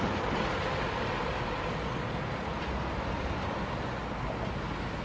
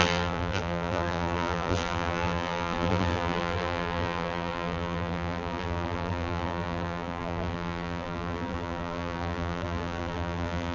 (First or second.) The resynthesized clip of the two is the second